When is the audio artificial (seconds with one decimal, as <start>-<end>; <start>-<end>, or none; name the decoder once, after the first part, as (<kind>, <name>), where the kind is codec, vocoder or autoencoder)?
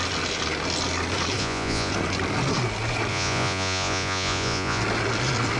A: 1.4-1.9 (vocoder, Vocos); 3.1-4.8